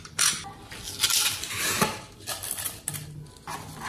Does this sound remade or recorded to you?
recorded